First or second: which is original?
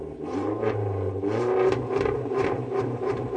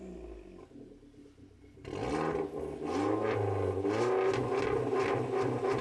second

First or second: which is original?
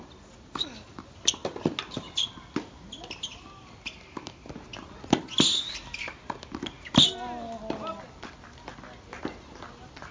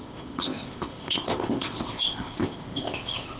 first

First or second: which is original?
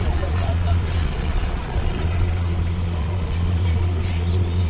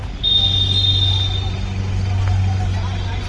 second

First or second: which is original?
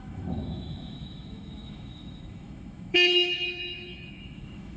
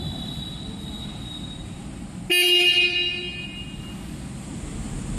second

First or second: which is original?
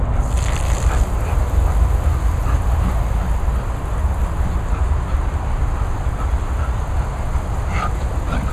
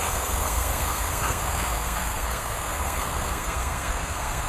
first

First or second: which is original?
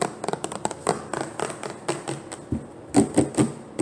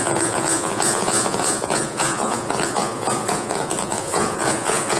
first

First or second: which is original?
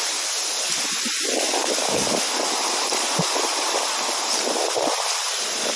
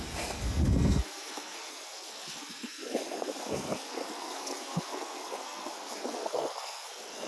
first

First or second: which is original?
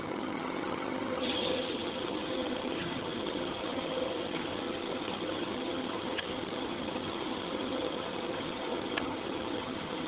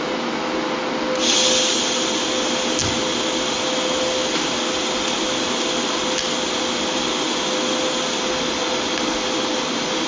second